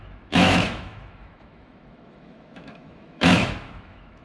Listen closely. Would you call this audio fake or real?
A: fake